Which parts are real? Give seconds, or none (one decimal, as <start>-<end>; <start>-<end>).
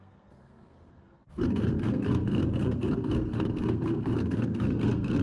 none